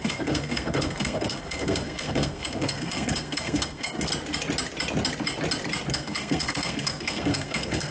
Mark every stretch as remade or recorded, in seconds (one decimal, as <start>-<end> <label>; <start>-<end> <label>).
0.0-4.1 remade; 4.1-5.9 recorded; 5.9-7.9 remade